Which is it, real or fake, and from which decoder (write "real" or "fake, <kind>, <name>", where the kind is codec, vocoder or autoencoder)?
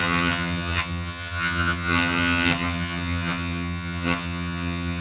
fake, vocoder, HiFi-GAN